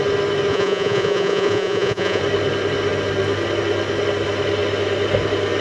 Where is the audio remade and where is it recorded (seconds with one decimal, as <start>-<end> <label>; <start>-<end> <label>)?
0.0-0.5 recorded; 0.5-2.2 remade; 2.2-5.6 recorded